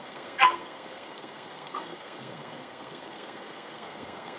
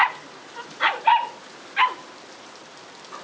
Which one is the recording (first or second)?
second